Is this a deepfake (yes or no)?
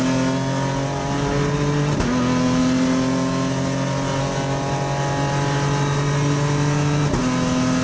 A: no